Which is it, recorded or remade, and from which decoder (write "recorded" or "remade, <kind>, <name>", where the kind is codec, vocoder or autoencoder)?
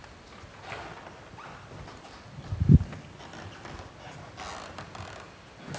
recorded